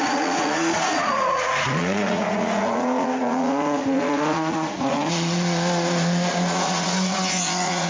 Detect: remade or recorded remade